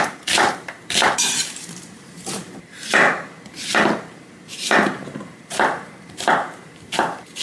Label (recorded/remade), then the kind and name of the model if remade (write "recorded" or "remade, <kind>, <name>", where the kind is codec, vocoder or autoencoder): remade, vocoder, BigVGAN v2